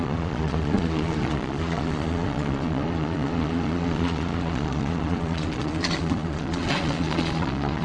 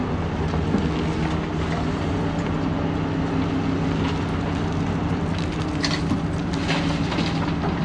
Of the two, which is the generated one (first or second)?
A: first